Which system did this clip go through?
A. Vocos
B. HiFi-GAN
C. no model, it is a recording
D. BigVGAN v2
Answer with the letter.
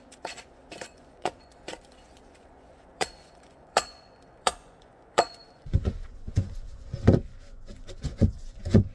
A